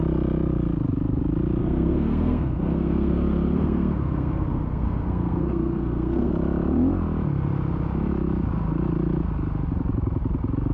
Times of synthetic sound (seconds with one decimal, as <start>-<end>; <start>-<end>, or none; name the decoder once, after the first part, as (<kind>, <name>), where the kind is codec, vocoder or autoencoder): 1.6-6.3 (codec, SNAC)